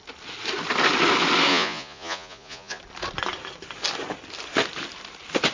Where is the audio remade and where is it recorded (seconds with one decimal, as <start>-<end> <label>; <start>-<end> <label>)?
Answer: 0.0-1.5 recorded; 1.5-2.8 remade; 2.8-5.5 recorded